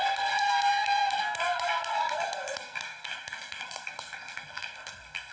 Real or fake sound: fake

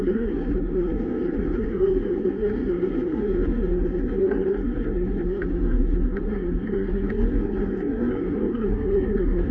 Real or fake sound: fake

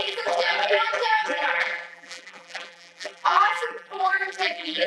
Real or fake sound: fake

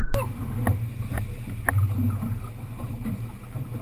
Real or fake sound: real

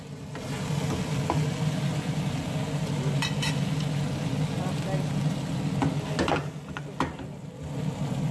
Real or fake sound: real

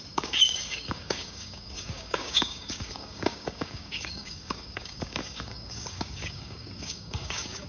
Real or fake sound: fake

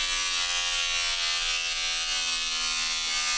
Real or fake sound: real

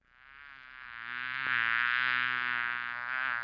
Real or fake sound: fake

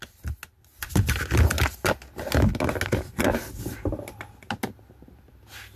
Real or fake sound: real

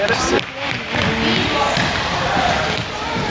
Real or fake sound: real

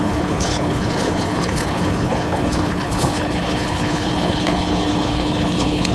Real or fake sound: fake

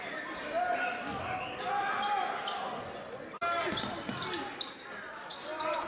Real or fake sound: real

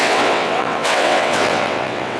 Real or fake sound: fake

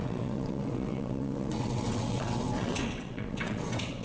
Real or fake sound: fake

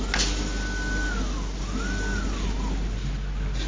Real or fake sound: real